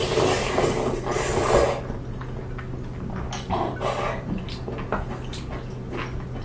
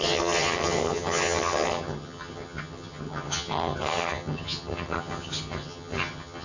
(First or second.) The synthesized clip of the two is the second